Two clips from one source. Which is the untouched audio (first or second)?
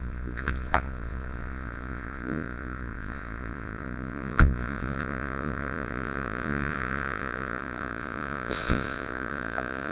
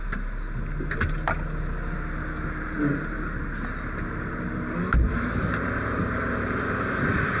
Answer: second